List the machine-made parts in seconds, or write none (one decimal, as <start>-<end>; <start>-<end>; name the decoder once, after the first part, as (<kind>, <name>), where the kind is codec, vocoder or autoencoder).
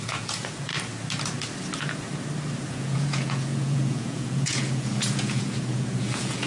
0.0-0.7 (vocoder, Vocos); 2.6-6.5